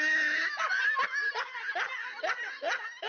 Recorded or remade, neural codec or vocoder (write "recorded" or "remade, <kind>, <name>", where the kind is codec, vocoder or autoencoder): recorded